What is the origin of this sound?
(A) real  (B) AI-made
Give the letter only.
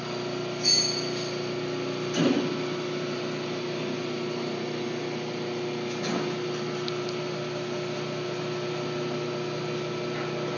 A